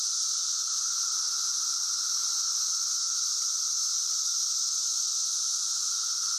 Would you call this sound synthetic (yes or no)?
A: no